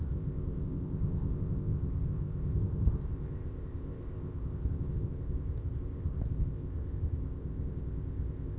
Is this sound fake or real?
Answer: fake